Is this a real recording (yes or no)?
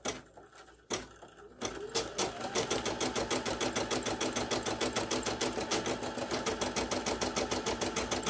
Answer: yes